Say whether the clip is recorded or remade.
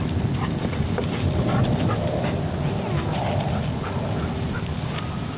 recorded